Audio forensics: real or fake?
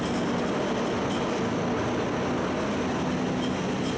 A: real